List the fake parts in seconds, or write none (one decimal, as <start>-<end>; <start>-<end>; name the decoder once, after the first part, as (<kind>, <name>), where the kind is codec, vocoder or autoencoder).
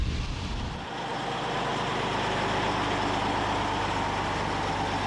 1.1-1.7 (vocoder, BigVGAN v2)